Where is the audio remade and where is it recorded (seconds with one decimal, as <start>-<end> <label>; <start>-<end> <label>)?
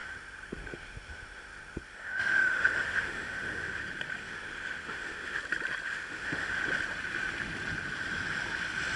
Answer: 0.0-3.8 remade; 3.8-4.2 recorded; 4.2-5.4 remade; 5.4-5.9 recorded; 5.9-6.6 remade; 6.6-9.0 recorded